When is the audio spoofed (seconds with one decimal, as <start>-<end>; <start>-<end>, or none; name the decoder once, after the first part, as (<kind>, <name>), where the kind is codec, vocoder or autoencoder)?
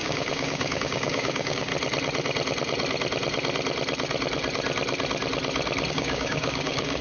0.0-1.7 (codec, DAC); 5.9-7.0